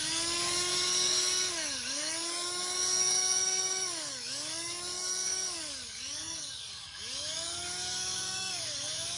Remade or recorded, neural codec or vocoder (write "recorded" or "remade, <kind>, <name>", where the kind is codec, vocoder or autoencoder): remade, codec, DAC